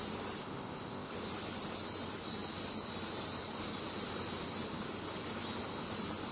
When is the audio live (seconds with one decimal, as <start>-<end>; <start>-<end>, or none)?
0.0-0.4; 1.1-6.3